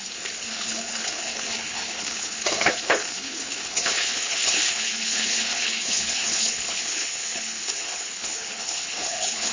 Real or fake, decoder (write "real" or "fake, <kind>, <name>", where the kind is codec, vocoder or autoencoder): fake, codec, HILCodec